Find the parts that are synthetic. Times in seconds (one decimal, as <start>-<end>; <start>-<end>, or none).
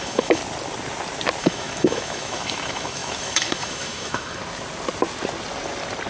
0.0-0.4; 1.4-4.4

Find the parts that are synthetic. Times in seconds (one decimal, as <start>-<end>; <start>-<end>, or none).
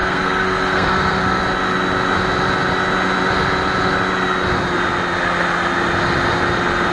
0.0-1.4